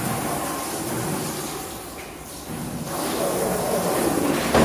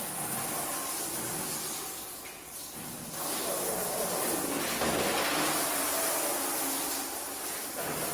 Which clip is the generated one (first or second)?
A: first